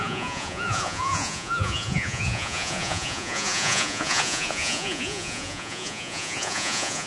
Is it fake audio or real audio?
fake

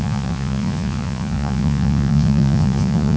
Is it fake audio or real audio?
fake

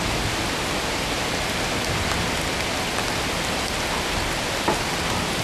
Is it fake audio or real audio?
real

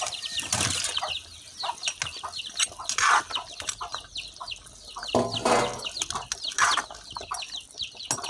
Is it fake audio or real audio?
real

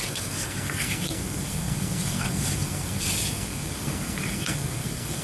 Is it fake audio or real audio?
fake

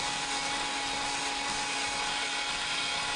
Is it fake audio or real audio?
real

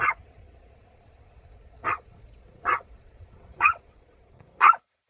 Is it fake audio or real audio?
fake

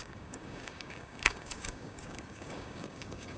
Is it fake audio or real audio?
fake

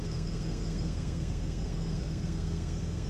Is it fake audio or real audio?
fake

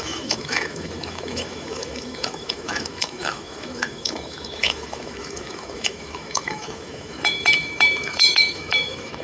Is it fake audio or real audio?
fake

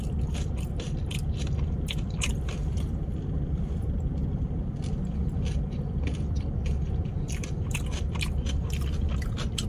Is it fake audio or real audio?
fake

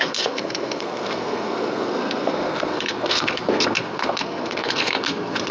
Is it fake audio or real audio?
fake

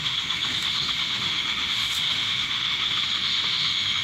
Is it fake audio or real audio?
fake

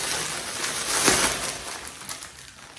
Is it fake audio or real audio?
real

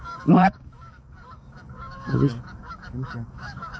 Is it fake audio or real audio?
fake